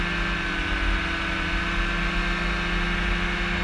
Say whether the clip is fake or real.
real